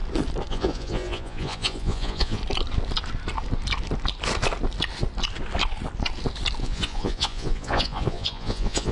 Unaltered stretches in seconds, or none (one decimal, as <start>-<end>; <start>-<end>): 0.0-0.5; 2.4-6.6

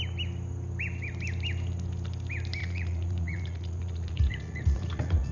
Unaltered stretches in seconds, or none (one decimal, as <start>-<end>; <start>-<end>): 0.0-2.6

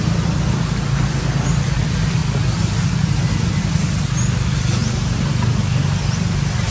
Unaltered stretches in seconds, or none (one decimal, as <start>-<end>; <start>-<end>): 0.0-6.7

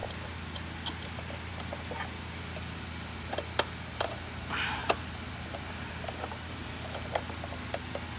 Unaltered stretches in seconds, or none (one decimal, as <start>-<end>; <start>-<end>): 0.0-8.2